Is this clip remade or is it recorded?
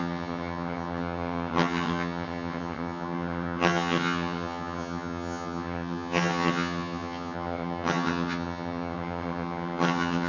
remade